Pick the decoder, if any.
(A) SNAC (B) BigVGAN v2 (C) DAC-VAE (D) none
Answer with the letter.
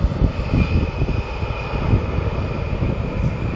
D